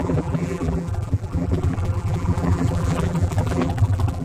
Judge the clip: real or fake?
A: fake